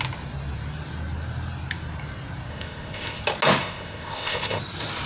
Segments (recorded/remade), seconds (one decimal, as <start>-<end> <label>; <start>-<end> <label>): 0.0-2.5 recorded; 2.5-3.2 remade; 3.2-3.6 recorded; 3.6-4.6 remade; 4.6-5.1 recorded

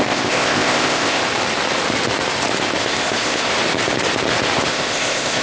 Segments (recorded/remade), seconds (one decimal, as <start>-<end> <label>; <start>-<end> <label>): 0.0-1.2 remade; 1.2-2.8 recorded; 2.8-3.5 remade; 3.5-4.7 recorded; 4.7-5.4 remade

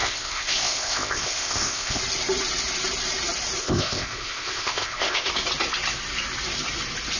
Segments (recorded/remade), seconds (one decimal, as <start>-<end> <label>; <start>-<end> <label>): 0.0-2.0 remade; 2.0-3.6 recorded; 3.6-5.3 remade; 5.3-7.2 recorded

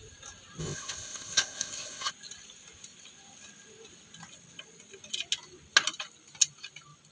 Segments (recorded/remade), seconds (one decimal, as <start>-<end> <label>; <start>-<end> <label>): 0.0-0.6 recorded; 0.6-2.1 remade; 2.1-7.1 recorded